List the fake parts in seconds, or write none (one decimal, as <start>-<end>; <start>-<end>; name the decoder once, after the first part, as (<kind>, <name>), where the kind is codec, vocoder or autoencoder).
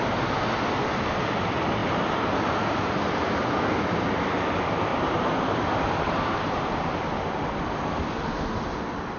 1.8-2.9 (vocoder, BigVGAN v2); 4.9-6.9